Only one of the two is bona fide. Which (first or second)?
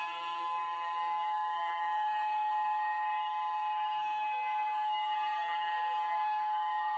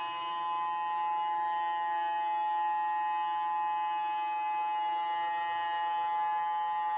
second